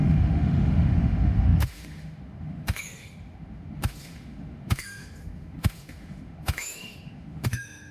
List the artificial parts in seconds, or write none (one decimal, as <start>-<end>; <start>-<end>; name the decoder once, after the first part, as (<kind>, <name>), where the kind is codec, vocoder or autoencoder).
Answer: 0.0-7.9 (autoencoder, DAC-VAE)